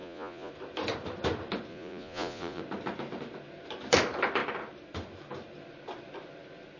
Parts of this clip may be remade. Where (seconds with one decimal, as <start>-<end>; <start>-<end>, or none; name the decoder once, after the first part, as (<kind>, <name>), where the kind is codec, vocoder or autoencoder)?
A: 0.0-0.5 (vocoder, Vocos); 1.7-2.6